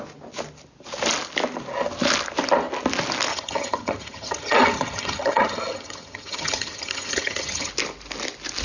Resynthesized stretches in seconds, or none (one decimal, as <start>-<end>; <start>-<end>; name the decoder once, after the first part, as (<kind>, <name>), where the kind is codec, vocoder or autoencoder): 3.3-7.7 (vocoder, HiFi-GAN)

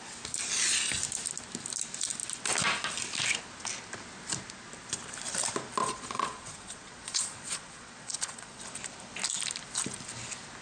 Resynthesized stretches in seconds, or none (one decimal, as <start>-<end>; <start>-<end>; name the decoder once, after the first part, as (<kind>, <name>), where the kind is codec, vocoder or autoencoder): 5.8-8.6 (vocoder, Vocos)

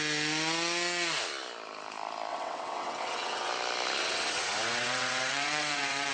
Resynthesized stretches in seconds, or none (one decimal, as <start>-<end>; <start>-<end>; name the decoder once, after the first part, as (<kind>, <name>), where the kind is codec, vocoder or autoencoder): 2.3-3.5 (vocoder, WaveNeXt); 4.0-6.1

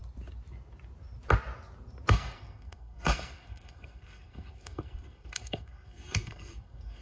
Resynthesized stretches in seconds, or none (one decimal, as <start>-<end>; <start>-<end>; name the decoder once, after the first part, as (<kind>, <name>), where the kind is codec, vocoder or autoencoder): 2.1-7.0 (codec, SNAC)

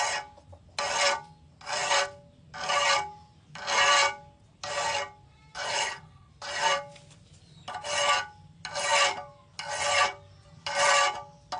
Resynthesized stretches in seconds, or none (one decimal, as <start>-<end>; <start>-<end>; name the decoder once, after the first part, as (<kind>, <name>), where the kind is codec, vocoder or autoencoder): 5.7-6.3 (codec, HILCodec)

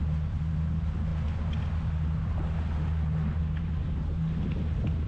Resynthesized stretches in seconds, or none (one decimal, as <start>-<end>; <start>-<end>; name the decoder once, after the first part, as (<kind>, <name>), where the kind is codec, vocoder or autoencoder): none